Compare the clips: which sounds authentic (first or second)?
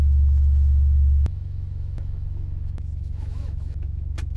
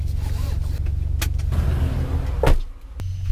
second